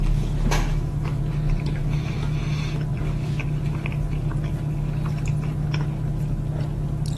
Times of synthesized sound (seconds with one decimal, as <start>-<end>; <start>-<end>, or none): 0.7-1.2; 1.8-2.4